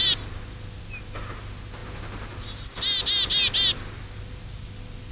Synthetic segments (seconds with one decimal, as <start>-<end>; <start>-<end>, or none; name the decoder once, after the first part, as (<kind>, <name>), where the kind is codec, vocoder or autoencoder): none